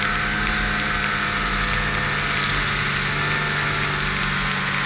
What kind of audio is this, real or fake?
real